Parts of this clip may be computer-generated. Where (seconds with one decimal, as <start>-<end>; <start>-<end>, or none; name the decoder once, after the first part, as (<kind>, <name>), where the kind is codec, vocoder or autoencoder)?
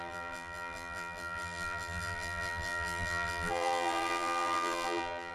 0.0-5.3 (vocoder, BigVGAN v2)